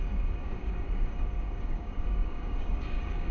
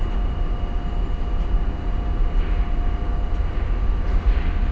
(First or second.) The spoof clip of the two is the first